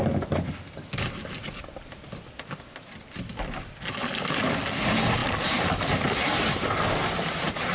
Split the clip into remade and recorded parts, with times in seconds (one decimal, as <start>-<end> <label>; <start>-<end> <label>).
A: 0.0-5.2 recorded; 5.2-5.9 remade; 5.9-7.7 recorded